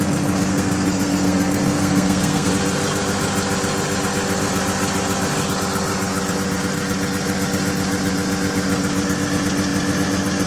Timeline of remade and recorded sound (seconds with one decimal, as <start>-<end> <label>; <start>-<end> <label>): 0.0-0.5 recorded; 0.5-2.5 remade; 2.5-10.5 recorded